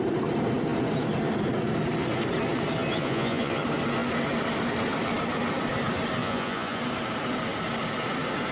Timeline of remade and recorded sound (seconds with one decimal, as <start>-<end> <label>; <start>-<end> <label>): 0.0-2.9 recorded; 2.9-3.6 remade; 3.6-6.2 recorded; 6.2-6.8 remade; 6.8-8.5 recorded